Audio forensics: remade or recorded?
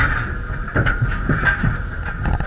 recorded